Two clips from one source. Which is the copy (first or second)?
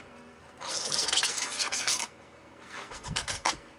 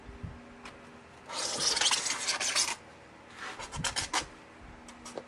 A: first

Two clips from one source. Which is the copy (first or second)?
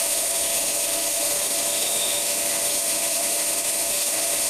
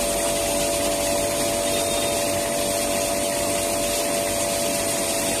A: first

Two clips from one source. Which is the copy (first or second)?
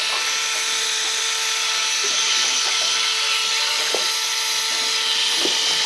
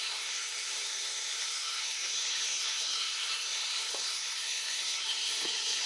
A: second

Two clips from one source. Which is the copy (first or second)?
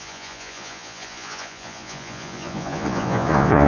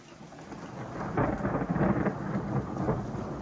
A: first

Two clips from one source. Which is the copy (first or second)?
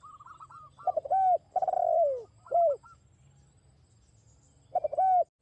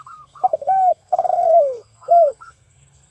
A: second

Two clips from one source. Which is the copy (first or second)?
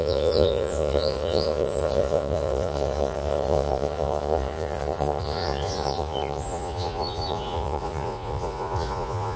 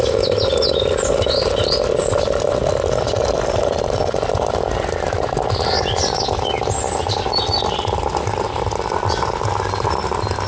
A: first